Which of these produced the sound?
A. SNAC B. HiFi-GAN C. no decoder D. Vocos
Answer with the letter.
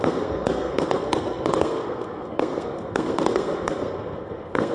A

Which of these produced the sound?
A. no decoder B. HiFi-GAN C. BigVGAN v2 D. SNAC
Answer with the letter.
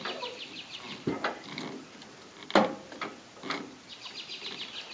A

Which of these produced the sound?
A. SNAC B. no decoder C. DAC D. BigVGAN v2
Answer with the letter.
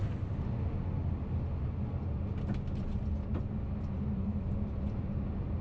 B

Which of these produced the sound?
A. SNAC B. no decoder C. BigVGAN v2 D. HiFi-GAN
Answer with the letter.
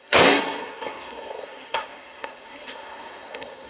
A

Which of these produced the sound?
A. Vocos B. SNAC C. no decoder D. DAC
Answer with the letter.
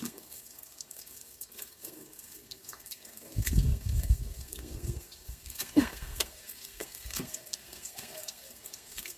B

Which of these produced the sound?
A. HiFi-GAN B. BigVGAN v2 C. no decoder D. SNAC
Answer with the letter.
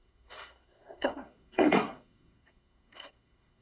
D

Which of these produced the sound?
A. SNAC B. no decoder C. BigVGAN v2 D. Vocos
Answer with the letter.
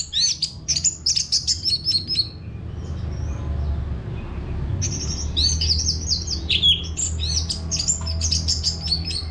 B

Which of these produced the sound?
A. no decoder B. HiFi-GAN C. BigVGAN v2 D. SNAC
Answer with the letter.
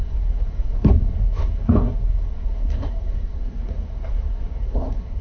D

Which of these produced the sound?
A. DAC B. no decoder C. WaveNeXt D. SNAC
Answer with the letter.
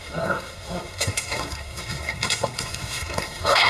D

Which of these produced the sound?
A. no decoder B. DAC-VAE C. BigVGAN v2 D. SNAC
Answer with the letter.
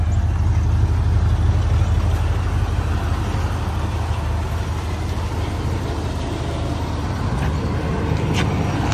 A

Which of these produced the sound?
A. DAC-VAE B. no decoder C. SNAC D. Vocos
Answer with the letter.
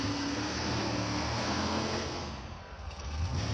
C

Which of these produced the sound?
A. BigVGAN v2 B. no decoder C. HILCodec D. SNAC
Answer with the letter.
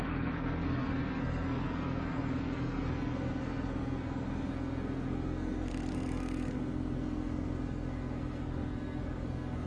D